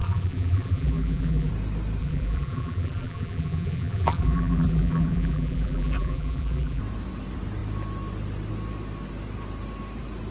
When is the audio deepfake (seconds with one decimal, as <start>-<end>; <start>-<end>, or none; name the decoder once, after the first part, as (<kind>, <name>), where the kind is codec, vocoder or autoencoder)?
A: 0.0-1.5 (vocoder, BigVGAN v2); 2.0-6.8